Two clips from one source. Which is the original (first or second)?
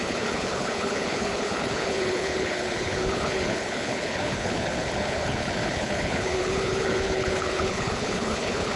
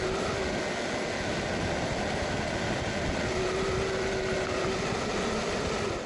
second